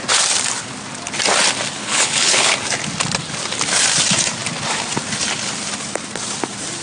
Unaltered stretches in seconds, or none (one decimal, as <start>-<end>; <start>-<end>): 0.0-1.8; 2.5-6.8